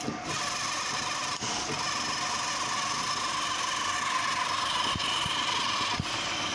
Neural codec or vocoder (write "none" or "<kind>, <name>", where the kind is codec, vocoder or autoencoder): none